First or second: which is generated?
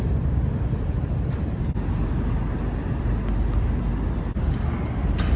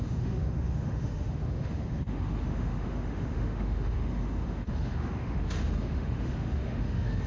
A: second